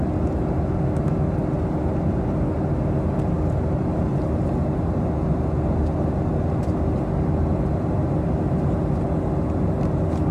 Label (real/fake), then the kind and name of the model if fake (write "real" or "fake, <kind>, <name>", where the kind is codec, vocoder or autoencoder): real